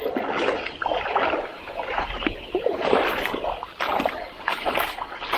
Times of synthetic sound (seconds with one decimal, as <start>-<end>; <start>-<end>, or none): 1.5-4.7